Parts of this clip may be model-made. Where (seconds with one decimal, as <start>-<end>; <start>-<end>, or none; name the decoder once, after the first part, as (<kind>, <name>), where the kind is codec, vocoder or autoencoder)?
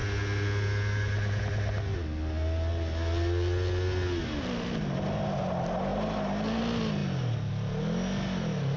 none